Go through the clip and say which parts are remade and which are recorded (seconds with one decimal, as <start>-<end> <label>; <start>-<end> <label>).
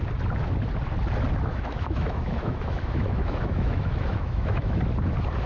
0.0-1.5 recorded; 1.5-4.8 remade; 4.8-5.5 recorded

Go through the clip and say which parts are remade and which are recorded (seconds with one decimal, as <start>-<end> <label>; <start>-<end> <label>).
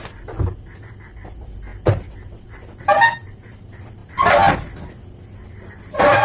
0.0-6.2 recorded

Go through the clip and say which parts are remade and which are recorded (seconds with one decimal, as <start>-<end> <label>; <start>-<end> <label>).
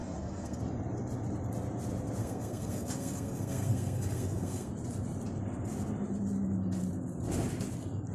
0.0-0.6 remade; 0.6-2.2 recorded; 2.2-4.7 remade; 4.7-8.1 recorded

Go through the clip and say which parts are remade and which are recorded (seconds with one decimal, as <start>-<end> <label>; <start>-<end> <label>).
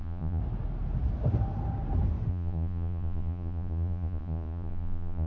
0.0-0.4 remade; 0.4-2.3 recorded; 2.3-5.3 remade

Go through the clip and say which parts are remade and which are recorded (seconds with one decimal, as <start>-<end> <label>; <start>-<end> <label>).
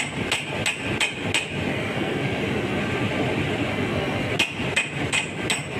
0.0-1.7 recorded; 1.7-2.8 remade; 2.8-3.7 recorded; 3.7-4.3 remade; 4.3-5.8 recorded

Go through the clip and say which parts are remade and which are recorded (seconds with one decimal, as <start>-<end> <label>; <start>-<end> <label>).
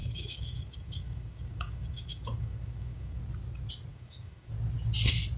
0.0-3.2 remade; 3.2-3.9 recorded; 3.9-4.5 remade; 4.5-5.4 recorded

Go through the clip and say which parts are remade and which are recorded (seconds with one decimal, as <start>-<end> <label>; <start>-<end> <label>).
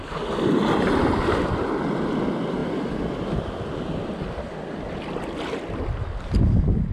0.0-6.9 recorded